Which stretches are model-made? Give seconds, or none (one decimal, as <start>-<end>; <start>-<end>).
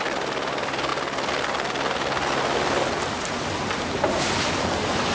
none